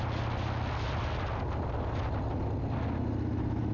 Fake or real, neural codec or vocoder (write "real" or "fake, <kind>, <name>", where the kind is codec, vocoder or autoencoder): real